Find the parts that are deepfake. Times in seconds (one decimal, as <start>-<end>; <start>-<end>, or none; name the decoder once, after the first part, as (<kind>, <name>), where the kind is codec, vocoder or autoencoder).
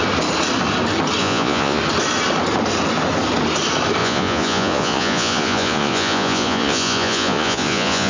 1.2-1.8 (vocoder, Vocos); 4.0-8.1